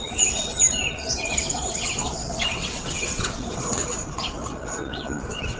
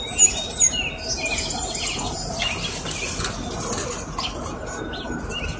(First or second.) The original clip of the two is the second